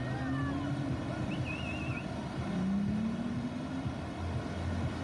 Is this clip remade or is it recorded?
recorded